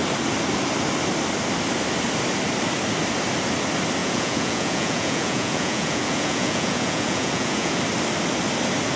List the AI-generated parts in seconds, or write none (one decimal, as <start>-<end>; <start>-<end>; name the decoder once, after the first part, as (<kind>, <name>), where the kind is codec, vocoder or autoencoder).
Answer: 4.0-7.8 (vocoder, Vocos)